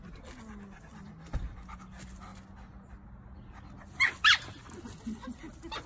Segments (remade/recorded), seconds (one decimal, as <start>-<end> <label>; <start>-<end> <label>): 0.0-5.9 recorded